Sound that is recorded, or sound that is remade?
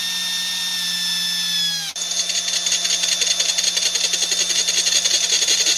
recorded